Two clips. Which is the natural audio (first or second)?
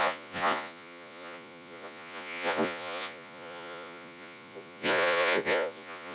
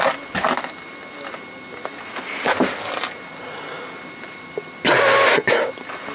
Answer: second